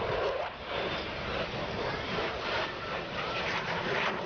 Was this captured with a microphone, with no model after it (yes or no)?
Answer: no